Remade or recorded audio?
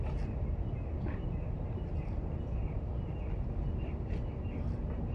recorded